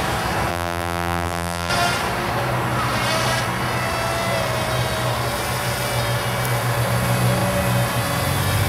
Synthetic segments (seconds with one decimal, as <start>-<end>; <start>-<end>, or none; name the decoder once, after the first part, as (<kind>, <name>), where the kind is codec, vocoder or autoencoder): 0.5-1.7 (vocoder, BigVGAN v2)